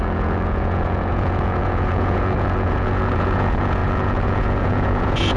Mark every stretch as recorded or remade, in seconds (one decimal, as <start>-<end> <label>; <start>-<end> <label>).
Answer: 0.0-5.4 remade